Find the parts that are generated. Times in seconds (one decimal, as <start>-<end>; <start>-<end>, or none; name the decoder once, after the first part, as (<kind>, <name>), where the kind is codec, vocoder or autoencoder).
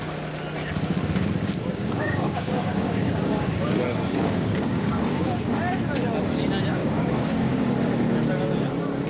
1.7-5.5 (codec, DAC); 6.8-7.6